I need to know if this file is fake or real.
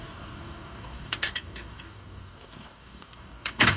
fake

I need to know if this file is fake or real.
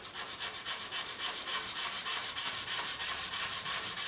fake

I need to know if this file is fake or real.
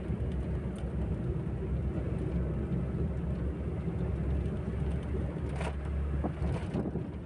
real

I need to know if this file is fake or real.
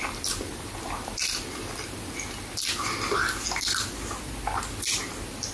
real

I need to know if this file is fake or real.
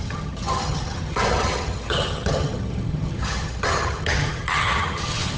fake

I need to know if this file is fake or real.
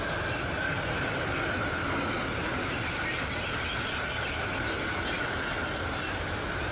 real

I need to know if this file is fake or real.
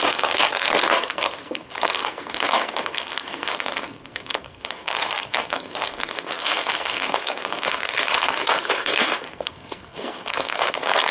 fake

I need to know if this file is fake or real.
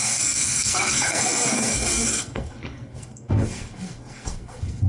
fake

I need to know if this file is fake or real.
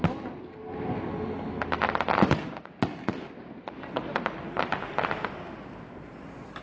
real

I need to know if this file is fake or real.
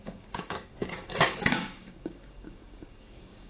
fake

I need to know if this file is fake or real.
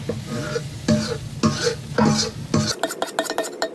real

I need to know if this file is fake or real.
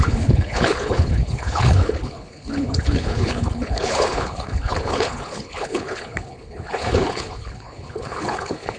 fake